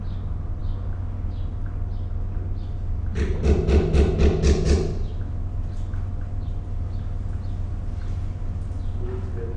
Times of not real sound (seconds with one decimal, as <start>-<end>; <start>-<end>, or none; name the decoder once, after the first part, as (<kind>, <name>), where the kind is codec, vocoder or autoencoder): none